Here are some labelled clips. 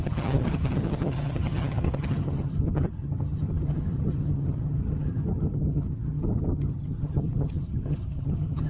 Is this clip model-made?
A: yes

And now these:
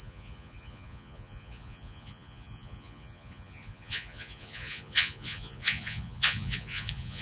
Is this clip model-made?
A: yes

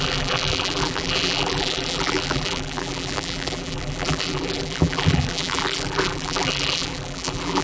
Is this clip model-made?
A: yes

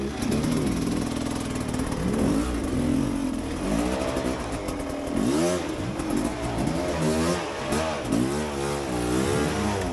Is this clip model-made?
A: no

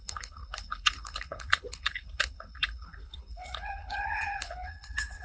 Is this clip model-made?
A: yes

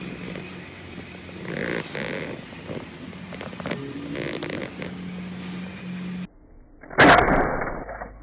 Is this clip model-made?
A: no